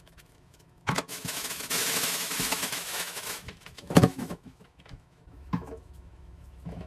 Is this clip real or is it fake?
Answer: fake